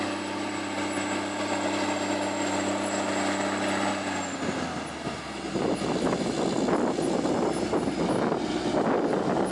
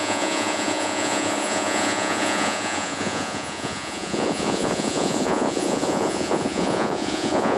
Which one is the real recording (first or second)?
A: first